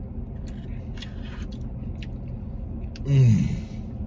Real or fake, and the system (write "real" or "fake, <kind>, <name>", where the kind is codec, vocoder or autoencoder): real